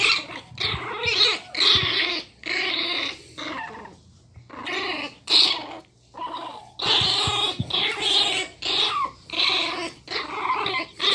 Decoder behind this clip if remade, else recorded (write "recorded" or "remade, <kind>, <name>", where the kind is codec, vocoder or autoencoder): recorded